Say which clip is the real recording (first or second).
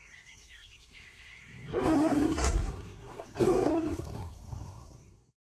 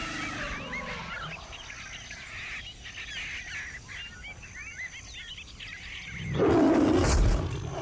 second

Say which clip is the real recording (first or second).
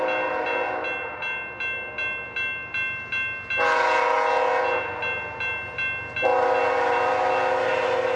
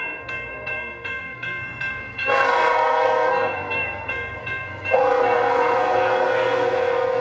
first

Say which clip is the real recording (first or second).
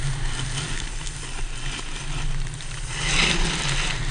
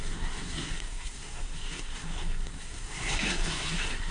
first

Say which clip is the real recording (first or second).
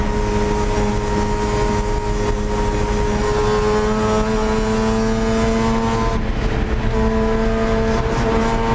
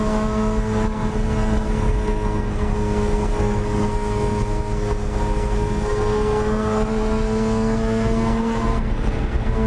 first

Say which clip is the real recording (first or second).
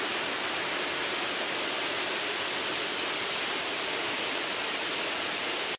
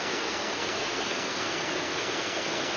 first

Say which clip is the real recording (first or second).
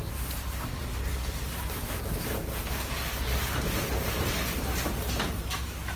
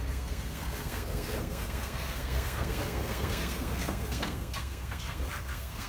first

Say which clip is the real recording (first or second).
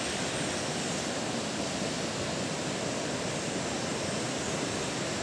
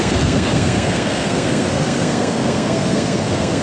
first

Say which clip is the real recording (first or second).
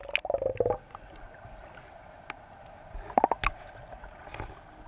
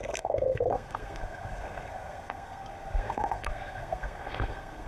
first